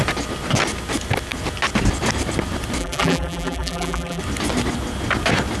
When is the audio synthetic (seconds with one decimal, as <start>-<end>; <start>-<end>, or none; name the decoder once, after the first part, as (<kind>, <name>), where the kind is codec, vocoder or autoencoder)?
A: 2.8-4.2 (vocoder, BigVGAN v2)